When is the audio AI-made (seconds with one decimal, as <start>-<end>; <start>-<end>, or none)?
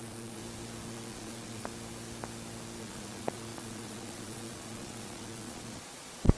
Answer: 0.0-0.4; 0.9-1.7; 2.8-6.4